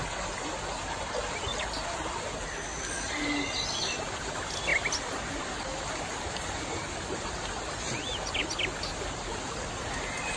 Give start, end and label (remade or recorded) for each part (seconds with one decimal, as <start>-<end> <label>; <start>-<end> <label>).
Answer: 0.0-10.4 recorded